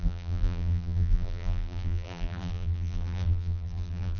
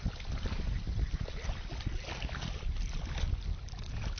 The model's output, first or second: first